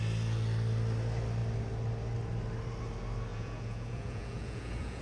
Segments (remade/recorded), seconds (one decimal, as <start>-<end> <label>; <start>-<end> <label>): 0.0-3.3 recorded; 3.3-5.0 remade